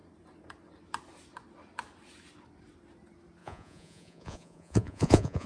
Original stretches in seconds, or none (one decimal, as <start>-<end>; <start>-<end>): 0.0-3.4